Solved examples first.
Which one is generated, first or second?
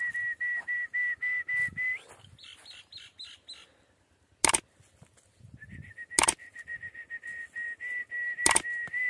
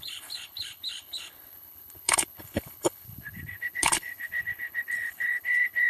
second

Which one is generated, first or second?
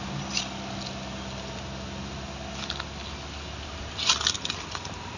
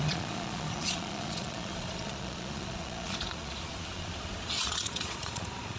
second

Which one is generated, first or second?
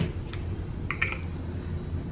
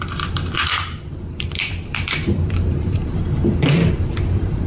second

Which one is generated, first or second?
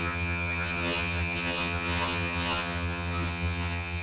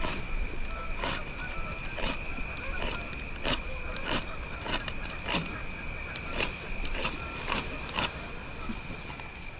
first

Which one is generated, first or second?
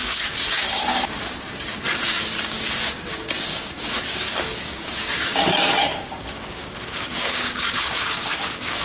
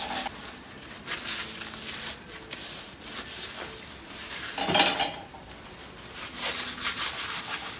first